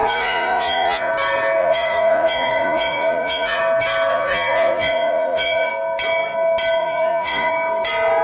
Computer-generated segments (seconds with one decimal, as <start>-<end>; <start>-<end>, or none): 0.0-1.1; 1.6-3.6; 4.1-5.7; 6.8-7.5